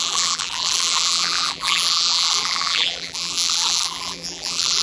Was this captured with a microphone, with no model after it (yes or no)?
no